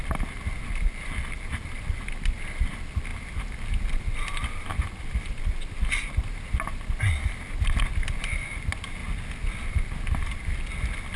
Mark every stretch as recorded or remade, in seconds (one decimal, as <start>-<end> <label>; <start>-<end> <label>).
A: 0.0-11.2 recorded